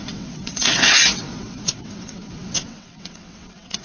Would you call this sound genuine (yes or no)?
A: no